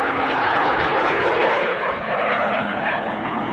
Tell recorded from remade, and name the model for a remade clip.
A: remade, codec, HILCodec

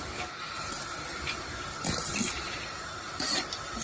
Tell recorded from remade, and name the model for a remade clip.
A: recorded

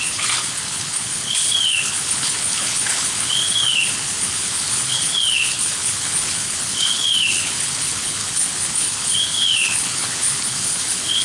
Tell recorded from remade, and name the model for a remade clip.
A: remade, codec, HILCodec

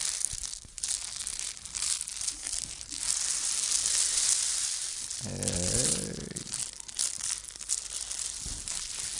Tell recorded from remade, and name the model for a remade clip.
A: recorded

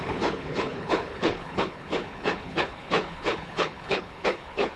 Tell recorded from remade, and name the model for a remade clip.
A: remade, codec, HILCodec